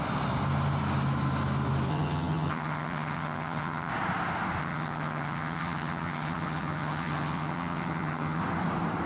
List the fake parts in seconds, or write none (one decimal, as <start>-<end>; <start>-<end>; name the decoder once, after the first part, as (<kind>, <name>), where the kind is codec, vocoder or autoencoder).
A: 1.9-3.9 (vocoder, HiFi-GAN); 4.6-8.4

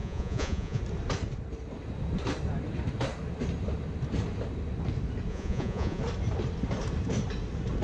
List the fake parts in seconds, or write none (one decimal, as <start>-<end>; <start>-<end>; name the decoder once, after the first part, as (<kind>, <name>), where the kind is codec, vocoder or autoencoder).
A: 0.0-0.8 (vocoder, Vocos); 5.3-6.0

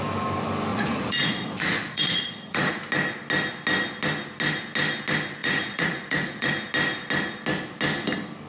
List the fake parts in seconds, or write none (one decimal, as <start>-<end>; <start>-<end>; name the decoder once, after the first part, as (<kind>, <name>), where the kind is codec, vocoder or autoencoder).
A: 0.7-2.7 (vocoder, Vocos); 5.4-6.5